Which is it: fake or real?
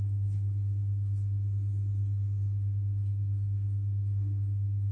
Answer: real